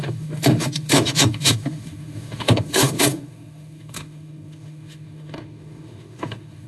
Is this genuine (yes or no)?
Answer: no